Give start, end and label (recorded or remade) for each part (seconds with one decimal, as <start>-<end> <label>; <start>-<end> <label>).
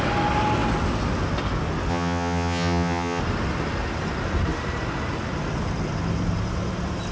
0.0-1.9 recorded; 1.9-3.2 remade; 3.2-7.1 recorded